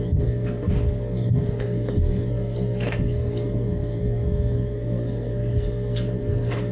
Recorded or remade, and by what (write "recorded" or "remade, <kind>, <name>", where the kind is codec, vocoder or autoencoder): remade, codec, SNAC